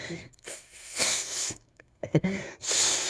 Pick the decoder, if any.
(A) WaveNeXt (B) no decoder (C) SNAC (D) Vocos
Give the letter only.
C